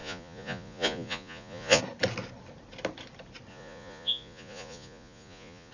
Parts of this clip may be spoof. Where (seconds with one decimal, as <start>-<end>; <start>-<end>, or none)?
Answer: 0.0-1.8; 3.5-5.7